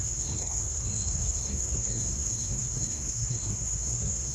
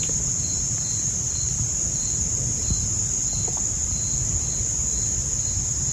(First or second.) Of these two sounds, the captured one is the second